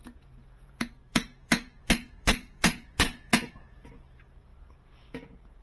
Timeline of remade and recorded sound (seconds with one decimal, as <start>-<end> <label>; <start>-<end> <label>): 0.0-5.6 remade